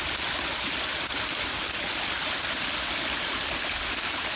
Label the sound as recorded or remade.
recorded